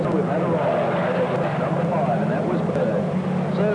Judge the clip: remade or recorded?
recorded